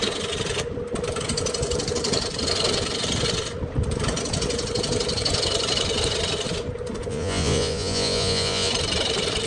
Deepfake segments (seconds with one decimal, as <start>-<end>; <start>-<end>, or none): 7.1-8.7